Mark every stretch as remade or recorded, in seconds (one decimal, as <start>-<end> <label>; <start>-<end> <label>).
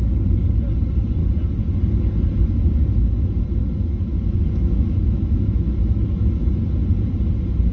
0.0-3.6 recorded; 3.6-6.6 remade; 6.6-7.7 recorded